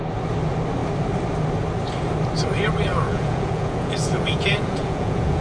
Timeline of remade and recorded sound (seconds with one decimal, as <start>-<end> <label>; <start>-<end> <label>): 0.0-2.9 recorded; 2.9-5.4 remade